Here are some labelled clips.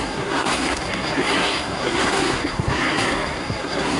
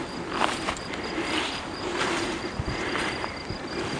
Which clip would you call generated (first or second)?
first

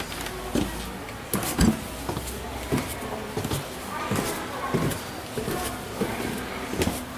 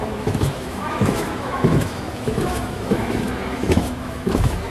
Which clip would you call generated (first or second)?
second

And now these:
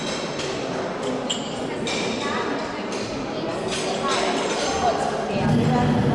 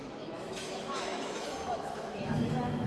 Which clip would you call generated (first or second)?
second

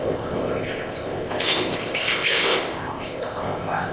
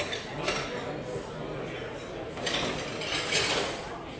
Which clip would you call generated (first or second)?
first